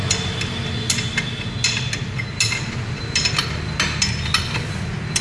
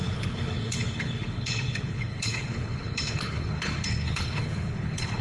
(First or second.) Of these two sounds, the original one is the first